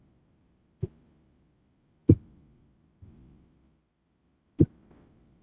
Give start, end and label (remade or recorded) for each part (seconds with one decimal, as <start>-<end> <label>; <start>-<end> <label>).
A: 0.0-5.4 recorded